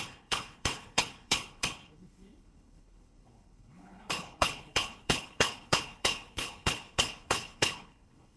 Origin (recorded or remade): remade